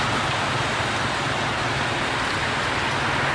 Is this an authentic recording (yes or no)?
yes